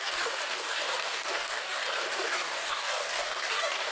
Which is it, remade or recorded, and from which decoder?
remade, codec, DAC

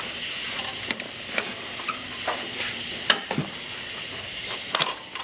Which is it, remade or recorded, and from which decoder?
recorded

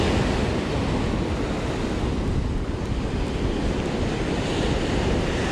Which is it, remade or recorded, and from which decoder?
recorded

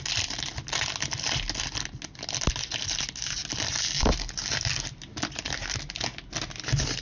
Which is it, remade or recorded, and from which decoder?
recorded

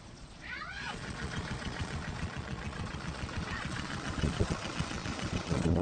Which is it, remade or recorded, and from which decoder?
remade, vocoder, Vocos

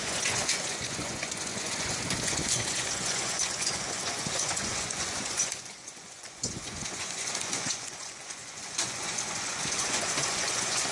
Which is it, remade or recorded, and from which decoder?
remade, vocoder, Vocos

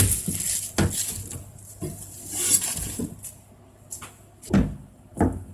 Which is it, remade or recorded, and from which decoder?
recorded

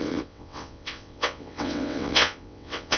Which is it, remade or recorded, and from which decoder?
remade, vocoder, WaveNeXt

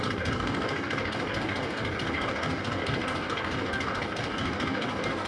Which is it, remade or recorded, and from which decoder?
remade, codec, DAC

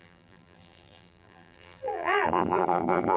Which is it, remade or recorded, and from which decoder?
remade, vocoder, BigVGAN v2